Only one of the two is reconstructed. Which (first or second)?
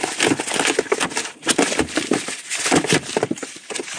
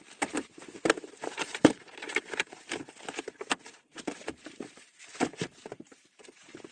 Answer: second